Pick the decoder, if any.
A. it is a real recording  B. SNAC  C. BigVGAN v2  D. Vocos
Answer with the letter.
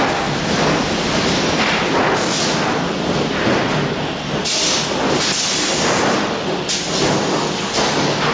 A